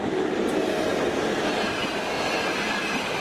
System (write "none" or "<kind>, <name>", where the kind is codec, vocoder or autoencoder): none